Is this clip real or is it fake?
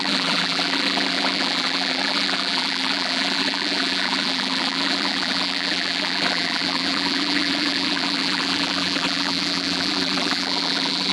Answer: fake